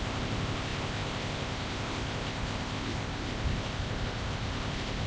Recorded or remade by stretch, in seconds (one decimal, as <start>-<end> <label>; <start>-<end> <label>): 0.0-5.1 remade